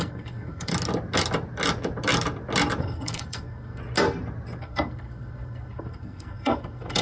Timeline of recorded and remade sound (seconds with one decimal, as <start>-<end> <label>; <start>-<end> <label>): 0.0-0.7 remade; 0.7-2.8 recorded; 2.8-3.8 remade; 3.8-4.6 recorded; 4.6-7.0 remade